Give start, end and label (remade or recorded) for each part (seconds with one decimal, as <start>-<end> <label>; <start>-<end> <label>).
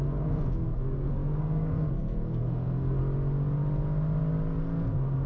0.0-3.0 remade; 3.0-4.6 recorded; 4.6-5.3 remade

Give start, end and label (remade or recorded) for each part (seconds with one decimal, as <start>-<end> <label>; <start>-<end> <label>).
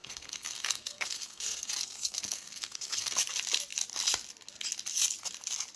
0.0-3.2 remade; 3.2-5.8 recorded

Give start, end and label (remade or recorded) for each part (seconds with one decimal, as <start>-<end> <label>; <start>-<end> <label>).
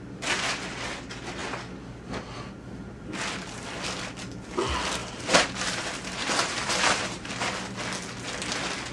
0.0-5.0 recorded; 5.0-7.3 remade; 7.3-8.9 recorded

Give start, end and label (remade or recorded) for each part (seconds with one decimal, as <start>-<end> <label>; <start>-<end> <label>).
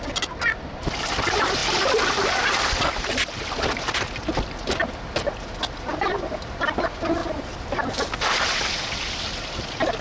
0.0-10.0 recorded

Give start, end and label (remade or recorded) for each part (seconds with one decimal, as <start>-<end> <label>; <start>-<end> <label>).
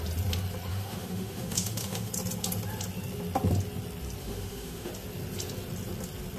0.0-0.7 recorded; 0.7-2.1 remade; 2.1-4.2 recorded; 4.2-4.9 remade; 4.9-6.4 recorded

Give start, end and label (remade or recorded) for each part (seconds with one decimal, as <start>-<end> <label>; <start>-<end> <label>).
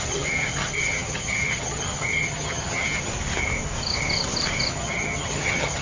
0.0-3.1 remade; 3.1-4.7 recorded; 4.7-5.8 remade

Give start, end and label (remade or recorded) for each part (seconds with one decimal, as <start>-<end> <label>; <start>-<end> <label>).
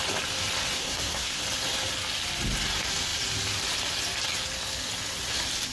0.0-0.8 recorded; 0.8-1.4 remade; 1.4-5.7 recorded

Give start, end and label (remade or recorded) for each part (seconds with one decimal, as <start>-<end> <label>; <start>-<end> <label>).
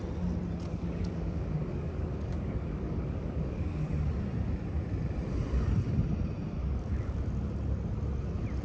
0.0-0.7 recorded; 0.7-3.9 remade; 3.9-6.6 recorded; 6.6-7.2 remade; 7.2-8.6 recorded